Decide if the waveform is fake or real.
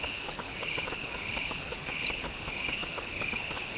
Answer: fake